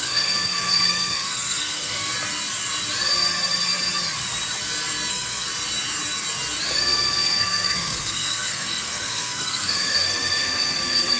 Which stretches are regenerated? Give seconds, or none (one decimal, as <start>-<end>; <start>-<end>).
0.0-2.1; 5.1-5.5; 6.8-11.2